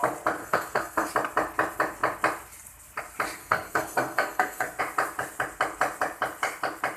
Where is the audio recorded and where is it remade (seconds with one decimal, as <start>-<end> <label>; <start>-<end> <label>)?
0.0-0.4 recorded; 0.4-1.1 remade; 1.1-3.4 recorded; 3.4-4.8 remade; 4.8-7.0 recorded

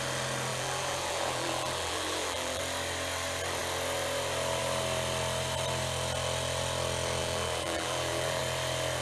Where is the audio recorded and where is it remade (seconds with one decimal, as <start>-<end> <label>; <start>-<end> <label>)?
0.0-0.5 recorded; 0.5-2.6 remade; 2.6-7.2 recorded; 7.2-8.4 remade; 8.4-9.0 recorded

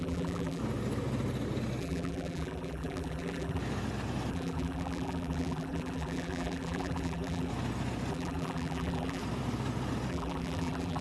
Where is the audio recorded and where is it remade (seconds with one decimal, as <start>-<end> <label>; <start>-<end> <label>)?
0.0-0.6 remade; 0.6-1.8 recorded; 1.8-3.6 remade; 3.6-4.3 recorded; 4.3-7.5 remade; 7.5-8.1 recorded; 8.1-9.2 remade; 9.2-10.1 recorded; 10.1-11.0 remade

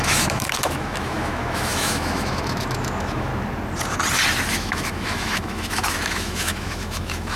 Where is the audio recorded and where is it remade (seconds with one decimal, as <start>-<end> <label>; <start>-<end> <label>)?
0.0-3.3 remade; 3.3-4.5 recorded; 4.5-7.4 remade

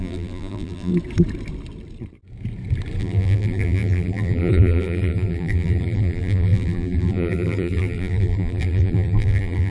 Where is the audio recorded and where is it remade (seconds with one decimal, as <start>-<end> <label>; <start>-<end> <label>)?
0.0-0.9 remade; 0.9-3.0 recorded; 3.0-9.7 remade